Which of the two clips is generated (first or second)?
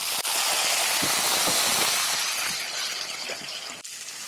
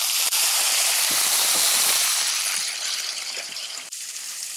second